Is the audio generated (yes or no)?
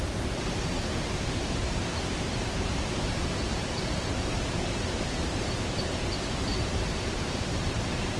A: yes